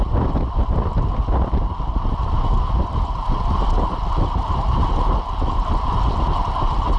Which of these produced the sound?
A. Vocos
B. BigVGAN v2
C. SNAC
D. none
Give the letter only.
D